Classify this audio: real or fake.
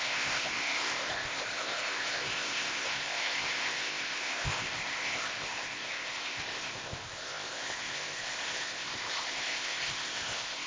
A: fake